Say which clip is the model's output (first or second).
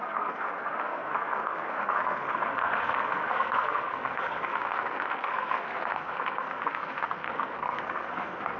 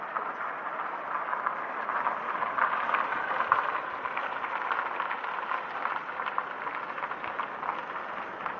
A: first